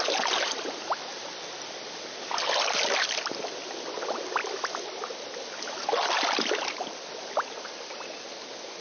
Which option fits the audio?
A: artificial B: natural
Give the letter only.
B